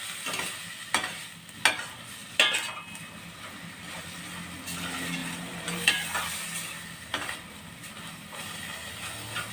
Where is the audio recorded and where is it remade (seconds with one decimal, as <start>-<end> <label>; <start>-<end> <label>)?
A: 0.0-5.2 recorded; 5.2-5.9 remade; 5.9-9.5 recorded